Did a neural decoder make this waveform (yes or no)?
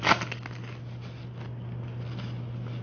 no